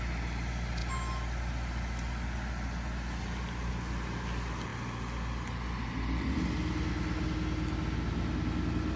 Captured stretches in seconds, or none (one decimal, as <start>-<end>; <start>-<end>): 0.0-9.0